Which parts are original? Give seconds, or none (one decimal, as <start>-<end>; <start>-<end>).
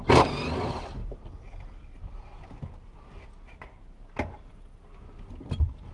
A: 0.0-5.9